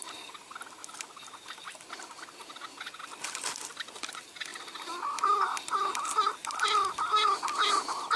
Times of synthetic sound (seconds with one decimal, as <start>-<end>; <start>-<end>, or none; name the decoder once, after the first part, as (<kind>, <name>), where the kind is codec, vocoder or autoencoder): none